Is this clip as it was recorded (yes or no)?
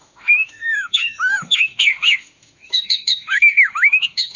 no